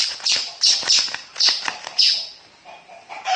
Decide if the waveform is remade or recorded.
remade